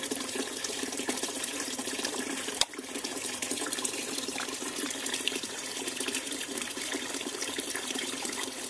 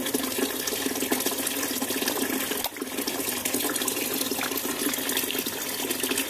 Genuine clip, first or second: second